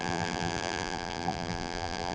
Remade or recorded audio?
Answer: remade